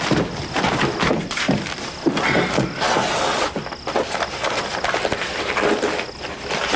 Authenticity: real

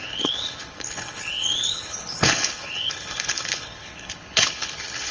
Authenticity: fake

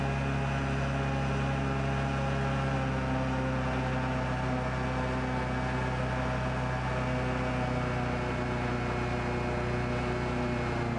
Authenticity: real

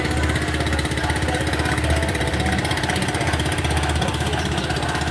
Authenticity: real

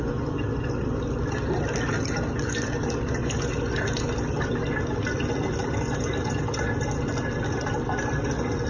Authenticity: real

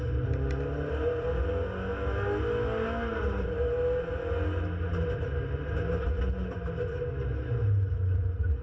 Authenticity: real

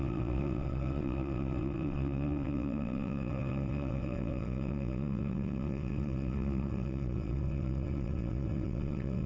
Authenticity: fake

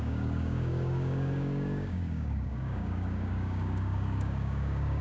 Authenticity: fake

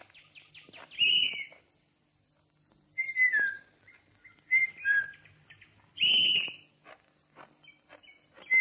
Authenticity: real